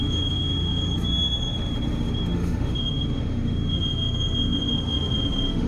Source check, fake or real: fake